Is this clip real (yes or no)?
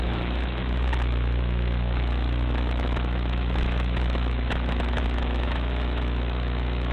no